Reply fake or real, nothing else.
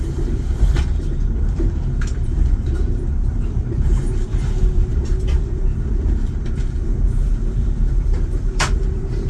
fake